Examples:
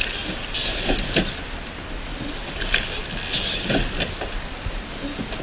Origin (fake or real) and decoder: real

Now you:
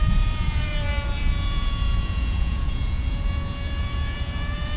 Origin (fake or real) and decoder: fake, vocoder, Vocos